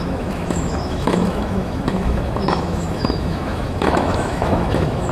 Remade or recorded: remade